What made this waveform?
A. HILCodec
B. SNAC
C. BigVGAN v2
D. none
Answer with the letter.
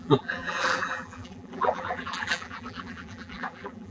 C